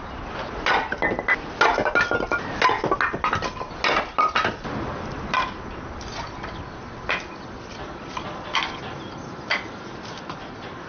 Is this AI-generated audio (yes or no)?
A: no